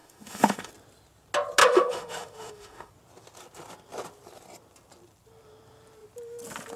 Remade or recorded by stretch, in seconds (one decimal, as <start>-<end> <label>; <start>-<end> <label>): 0.0-0.7 remade; 0.7-1.6 recorded; 1.6-2.9 remade; 2.9-6.8 recorded